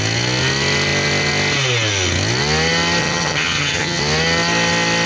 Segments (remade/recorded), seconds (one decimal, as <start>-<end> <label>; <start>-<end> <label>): 0.0-3.0 recorded; 3.0-4.0 remade; 4.0-5.1 recorded